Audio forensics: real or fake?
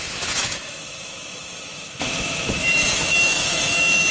fake